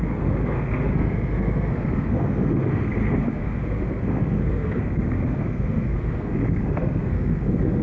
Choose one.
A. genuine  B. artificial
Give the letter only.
B